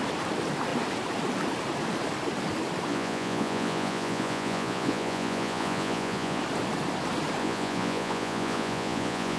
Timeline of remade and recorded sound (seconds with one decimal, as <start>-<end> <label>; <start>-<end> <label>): 0.0-2.9 recorded; 2.9-6.4 remade; 6.4-7.4 recorded; 7.4-9.4 remade